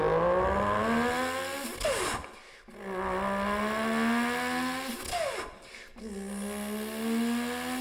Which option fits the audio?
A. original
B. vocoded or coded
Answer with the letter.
A